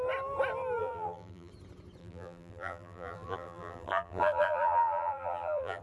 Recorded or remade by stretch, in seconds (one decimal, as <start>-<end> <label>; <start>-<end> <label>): 0.0-0.8 recorded; 0.8-1.5 remade; 1.5-2.0 recorded; 2.0-5.8 remade